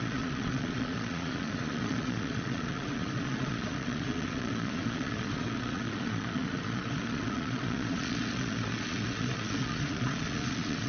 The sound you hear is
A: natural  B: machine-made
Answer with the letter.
B